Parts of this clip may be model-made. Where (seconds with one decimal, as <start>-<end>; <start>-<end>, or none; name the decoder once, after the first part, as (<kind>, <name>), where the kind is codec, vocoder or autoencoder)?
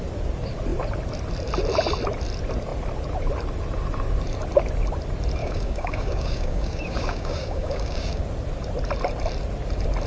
5.4-8.2 (codec, DAC)